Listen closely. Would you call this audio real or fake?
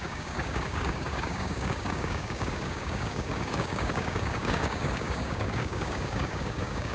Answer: fake